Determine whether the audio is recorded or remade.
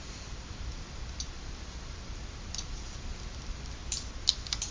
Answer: remade